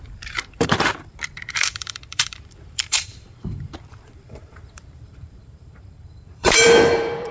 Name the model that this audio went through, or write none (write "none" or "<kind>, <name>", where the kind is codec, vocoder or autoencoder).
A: vocoder, BigVGAN v2